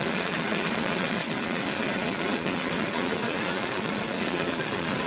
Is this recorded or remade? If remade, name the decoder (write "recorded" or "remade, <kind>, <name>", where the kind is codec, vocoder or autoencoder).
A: remade, vocoder, Vocos